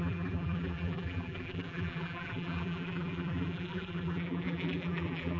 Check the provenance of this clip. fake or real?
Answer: fake